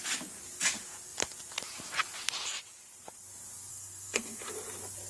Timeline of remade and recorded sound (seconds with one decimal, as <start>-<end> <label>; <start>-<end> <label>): 0.0-3.7 recorded; 3.7-4.5 remade; 4.5-5.1 recorded